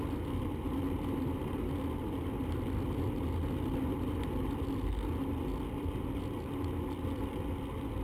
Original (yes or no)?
yes